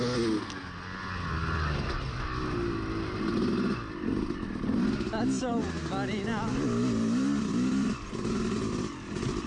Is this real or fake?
real